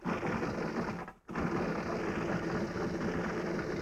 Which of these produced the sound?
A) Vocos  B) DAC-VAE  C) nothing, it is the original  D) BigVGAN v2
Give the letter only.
C